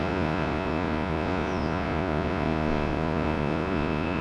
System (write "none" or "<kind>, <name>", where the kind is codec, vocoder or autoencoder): vocoder, Vocos